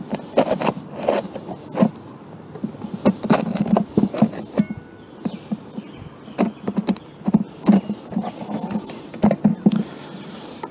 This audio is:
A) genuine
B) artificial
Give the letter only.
A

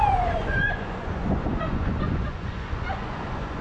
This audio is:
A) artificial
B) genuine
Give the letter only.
A